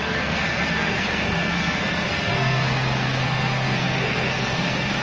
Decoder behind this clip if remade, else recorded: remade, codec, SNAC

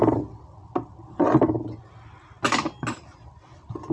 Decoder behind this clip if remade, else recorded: recorded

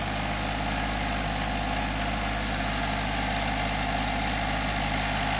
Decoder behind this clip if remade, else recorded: recorded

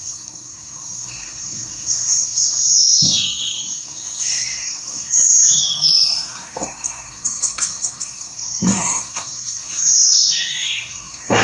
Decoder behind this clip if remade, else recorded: remade, codec, SNAC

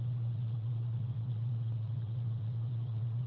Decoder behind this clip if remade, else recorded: remade, vocoder, WaveNeXt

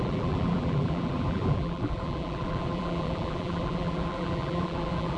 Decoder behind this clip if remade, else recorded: remade, vocoder, BigVGAN v2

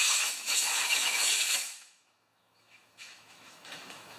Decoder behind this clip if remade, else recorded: remade, autoencoder, DAC-VAE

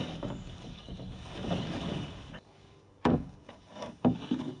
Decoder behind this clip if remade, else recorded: remade, codec, DAC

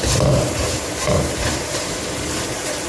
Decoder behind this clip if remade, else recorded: remade, vocoder, BigVGAN v2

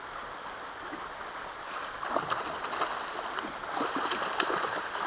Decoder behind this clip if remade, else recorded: recorded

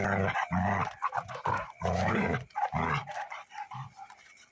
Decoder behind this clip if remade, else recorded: recorded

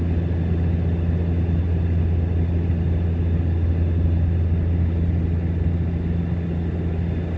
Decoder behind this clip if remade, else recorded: recorded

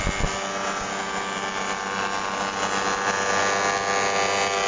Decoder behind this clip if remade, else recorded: recorded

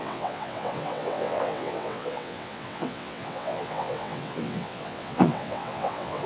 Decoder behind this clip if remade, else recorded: remade, vocoder, WaveNeXt